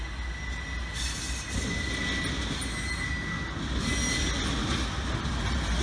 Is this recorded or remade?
recorded